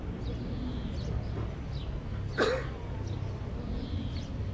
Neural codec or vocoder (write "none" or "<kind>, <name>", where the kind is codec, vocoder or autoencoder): none